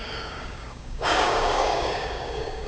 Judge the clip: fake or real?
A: fake